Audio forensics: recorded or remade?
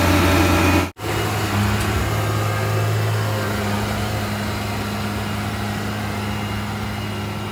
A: recorded